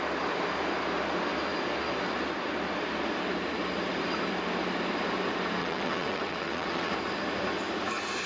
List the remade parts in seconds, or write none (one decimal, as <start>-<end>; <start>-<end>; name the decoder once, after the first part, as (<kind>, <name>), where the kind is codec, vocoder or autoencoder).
5.6-6.9 (vocoder, WaveNeXt)